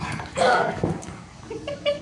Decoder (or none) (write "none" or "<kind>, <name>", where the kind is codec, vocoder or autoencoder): codec, DAC